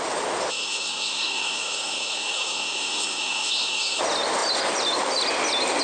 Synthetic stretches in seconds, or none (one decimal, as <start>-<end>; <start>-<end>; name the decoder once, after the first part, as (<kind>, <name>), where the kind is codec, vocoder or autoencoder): 0.5-4.0 (codec, SNAC)